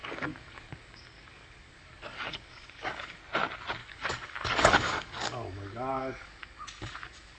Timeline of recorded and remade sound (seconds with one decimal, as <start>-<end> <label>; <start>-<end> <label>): 0.0-3.2 remade; 3.2-3.8 recorded; 3.8-7.4 remade